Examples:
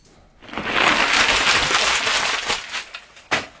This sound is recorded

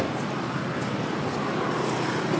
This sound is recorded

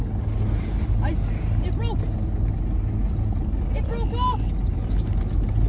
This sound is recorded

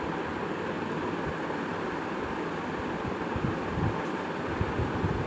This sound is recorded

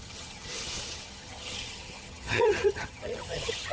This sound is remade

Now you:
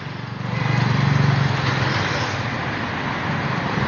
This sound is recorded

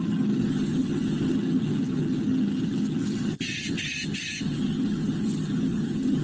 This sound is remade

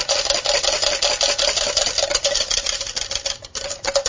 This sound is recorded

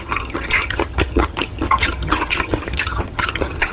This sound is remade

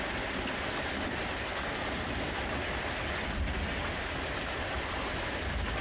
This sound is recorded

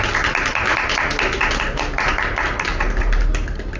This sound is recorded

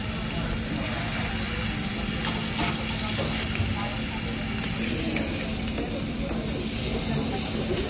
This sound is recorded